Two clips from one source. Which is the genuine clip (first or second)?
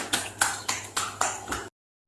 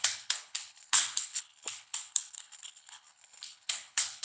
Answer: first